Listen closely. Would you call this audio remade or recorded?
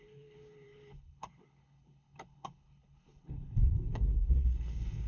remade